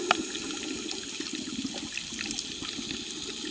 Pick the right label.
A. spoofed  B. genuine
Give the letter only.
B